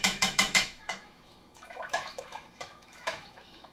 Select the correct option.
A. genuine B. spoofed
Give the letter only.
B